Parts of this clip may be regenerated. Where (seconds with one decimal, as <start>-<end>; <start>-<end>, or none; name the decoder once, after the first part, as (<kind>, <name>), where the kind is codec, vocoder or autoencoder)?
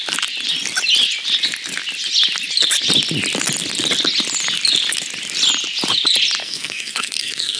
6.4-7.6 (codec, SNAC)